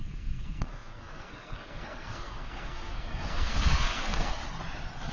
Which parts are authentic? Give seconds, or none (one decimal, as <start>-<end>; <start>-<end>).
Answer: 4.3-5.1

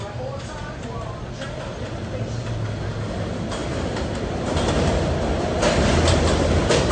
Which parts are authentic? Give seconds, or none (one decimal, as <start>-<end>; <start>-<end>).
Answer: 0.0-6.9

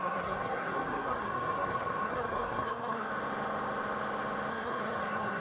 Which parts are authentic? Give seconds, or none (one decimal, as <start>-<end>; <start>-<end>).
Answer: 3.1-4.5

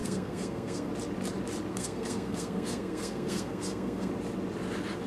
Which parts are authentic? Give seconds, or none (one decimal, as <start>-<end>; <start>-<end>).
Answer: 0.9-1.7; 4.1-5.1

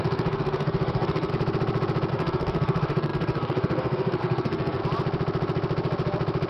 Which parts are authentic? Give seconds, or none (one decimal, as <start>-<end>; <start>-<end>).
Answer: 1.3-2.1; 4.8-6.5